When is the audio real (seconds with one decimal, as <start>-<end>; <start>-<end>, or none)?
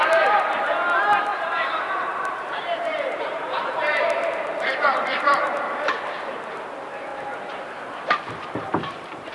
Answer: 7.1-8.5